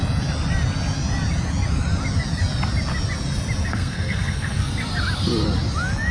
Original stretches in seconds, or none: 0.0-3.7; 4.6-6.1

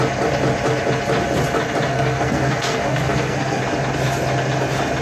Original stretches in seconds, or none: 0.0-1.9; 3.6-5.0

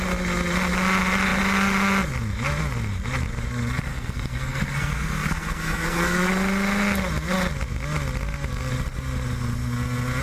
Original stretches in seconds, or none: 0.0-3.9; 6.3-10.2

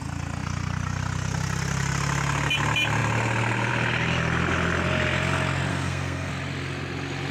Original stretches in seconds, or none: 0.0-5.7; 6.3-7.3

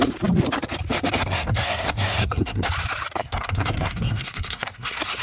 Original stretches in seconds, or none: 0.0-1.2; 2.7-3.2

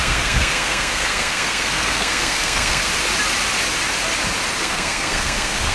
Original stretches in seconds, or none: 2.9-4.6

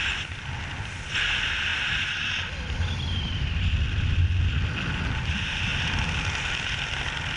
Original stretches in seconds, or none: 0.0-7.4

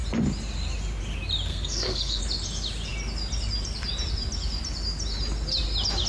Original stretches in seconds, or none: 0.0-1.5; 2.2-6.1